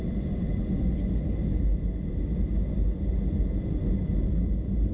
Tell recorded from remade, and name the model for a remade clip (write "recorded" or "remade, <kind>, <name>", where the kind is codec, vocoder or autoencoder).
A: recorded